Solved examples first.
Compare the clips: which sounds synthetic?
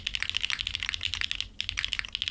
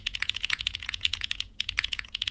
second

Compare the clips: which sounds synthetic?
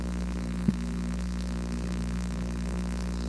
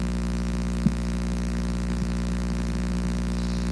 first